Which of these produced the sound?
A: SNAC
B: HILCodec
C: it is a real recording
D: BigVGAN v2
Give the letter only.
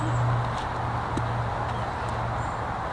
C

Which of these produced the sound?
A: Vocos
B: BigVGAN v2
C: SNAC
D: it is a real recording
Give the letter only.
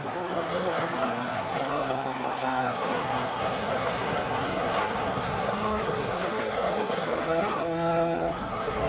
C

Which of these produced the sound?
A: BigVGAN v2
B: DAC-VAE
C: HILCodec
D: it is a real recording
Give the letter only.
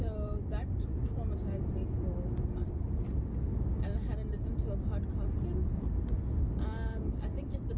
D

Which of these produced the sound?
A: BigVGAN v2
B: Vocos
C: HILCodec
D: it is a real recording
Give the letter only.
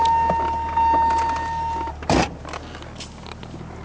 D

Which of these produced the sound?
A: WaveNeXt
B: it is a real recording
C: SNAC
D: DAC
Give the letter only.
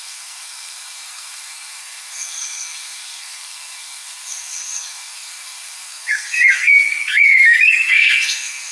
C